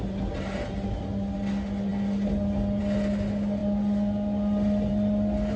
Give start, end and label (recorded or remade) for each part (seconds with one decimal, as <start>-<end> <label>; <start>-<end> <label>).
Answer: 0.0-5.6 recorded